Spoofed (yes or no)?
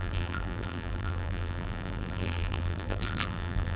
yes